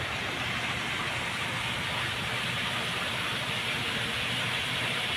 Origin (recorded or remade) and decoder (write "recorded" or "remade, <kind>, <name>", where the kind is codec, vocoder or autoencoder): recorded